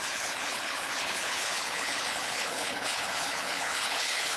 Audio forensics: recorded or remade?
remade